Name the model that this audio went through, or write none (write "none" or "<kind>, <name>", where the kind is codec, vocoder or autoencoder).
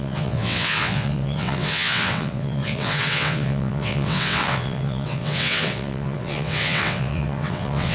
vocoder, WaveNeXt